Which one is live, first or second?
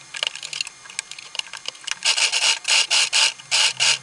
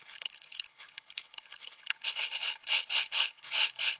first